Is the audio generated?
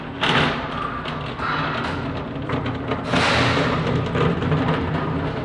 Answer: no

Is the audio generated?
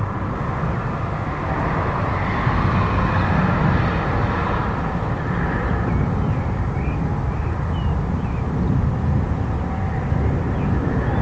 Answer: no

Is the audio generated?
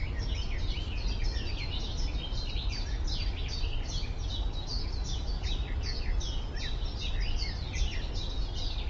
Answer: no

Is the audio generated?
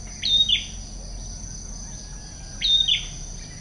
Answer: no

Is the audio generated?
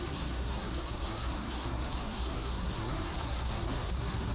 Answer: yes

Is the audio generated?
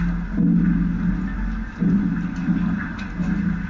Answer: no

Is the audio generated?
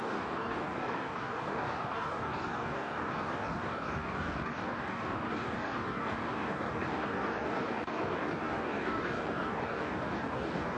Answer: yes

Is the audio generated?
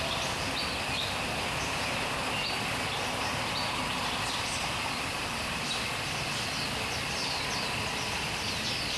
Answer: no